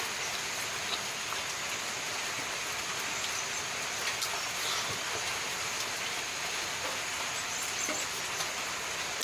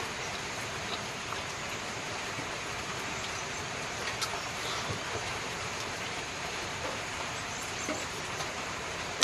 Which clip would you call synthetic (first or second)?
second